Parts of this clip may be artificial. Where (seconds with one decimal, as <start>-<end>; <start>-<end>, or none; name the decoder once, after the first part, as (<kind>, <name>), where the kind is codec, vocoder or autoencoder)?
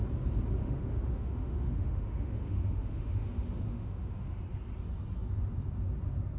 0.6-4.4 (autoencoder, DAC-VAE)